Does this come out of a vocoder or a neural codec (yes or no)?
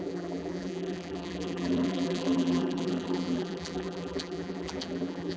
yes